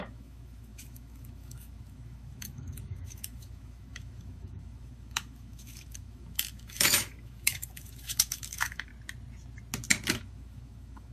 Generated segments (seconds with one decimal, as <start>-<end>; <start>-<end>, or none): 0.0-8.9; 10.1-11.1